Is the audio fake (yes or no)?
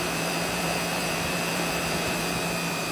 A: yes